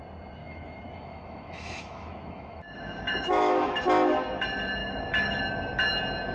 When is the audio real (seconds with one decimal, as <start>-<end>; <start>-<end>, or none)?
0.0-0.4; 3.8-4.8; 5.4-6.3

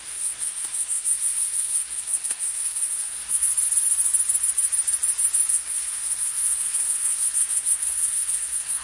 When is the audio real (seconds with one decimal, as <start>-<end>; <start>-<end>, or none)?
3.5-5.5

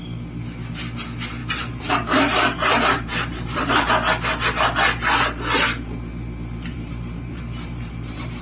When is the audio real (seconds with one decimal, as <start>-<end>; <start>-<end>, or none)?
0.0-1.4; 3.9-6.7

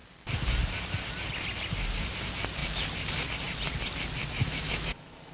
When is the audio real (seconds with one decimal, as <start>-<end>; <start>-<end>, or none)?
0.0-4.2

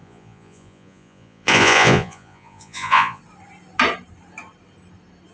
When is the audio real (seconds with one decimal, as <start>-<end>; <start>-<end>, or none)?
3.2-5.3

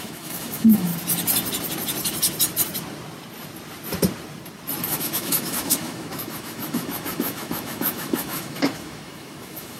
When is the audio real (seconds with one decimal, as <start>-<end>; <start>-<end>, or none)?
0.9-4.8

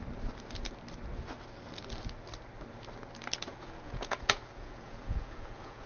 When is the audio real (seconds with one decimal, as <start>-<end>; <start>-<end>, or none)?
0.0-3.5